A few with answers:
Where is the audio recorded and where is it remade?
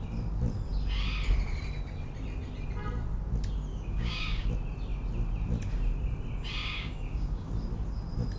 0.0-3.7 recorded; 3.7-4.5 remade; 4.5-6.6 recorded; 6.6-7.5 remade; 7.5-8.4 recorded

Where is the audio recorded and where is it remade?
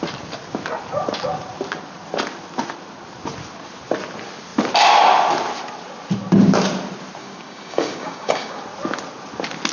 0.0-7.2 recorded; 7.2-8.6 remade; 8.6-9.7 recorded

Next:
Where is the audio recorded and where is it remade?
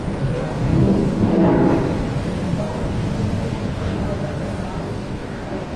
0.0-1.5 remade; 1.5-2.6 recorded; 2.6-3.0 remade; 3.0-3.5 recorded; 3.5-4.0 remade; 4.0-4.8 recorded; 4.8-5.8 remade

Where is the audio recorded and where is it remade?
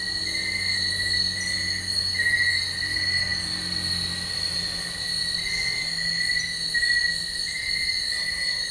0.0-8.7 recorded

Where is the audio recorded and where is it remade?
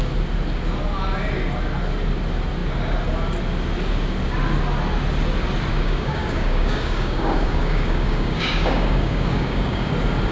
0.0-5.7 recorded; 5.7-9.9 remade; 9.9-10.3 recorded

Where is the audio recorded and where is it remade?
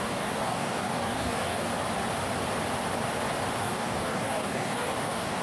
0.0-1.7 remade; 1.7-3.6 recorded; 3.6-5.4 remade